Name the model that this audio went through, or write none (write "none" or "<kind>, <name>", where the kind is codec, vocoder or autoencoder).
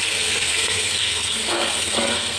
codec, SNAC